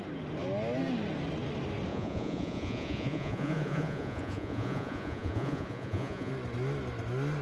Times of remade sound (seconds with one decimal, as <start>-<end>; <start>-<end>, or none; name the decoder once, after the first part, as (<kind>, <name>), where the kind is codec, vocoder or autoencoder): 1.9-6.3 (vocoder, Vocos)